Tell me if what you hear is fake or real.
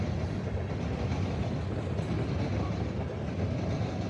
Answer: real